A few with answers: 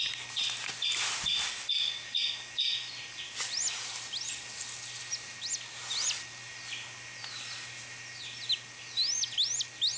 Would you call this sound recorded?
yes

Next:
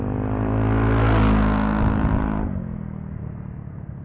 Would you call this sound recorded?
yes